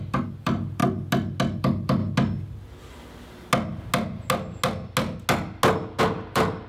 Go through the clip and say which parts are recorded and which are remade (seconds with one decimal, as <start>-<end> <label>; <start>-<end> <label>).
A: 0.0-0.8 remade; 0.8-1.6 recorded; 1.6-2.0 remade; 2.0-6.0 recorded; 6.0-6.7 remade